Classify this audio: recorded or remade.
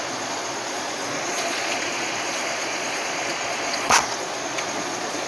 remade